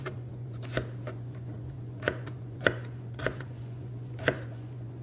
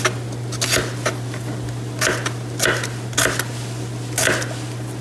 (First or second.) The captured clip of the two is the second